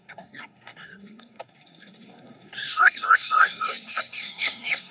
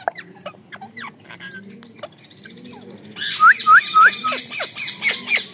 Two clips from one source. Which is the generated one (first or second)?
first